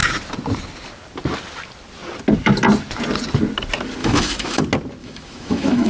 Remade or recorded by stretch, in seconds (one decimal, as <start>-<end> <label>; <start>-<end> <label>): 0.0-4.0 recorded; 4.0-4.6 remade; 4.6-5.0 recorded; 5.0-5.9 remade